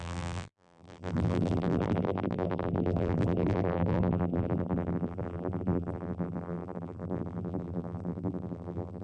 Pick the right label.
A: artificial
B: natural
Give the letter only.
A